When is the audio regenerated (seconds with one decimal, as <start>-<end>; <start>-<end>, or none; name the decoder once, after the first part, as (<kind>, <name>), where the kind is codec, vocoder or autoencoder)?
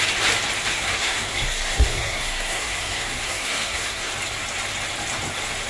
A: 0.7-4.1 (codec, SNAC)